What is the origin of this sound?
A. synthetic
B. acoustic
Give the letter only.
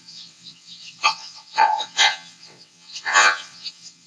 A